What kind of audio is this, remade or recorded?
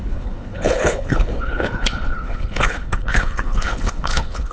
remade